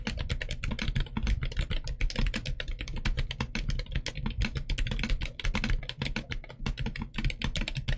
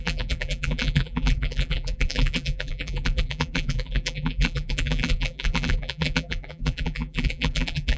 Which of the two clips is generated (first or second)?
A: second